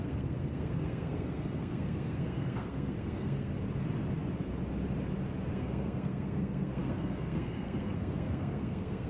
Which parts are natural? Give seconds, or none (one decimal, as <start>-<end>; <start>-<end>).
3.5-5.5